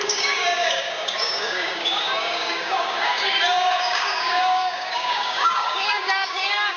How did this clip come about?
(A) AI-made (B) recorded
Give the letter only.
A